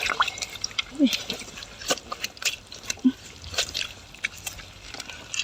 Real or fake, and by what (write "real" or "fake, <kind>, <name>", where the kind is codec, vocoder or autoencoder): fake, vocoder, BigVGAN v2